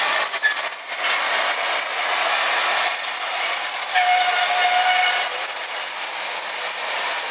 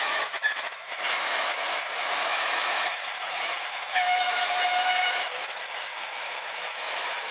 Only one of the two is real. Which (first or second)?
first